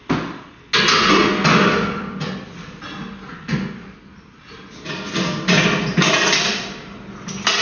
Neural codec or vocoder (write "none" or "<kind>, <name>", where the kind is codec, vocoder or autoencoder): none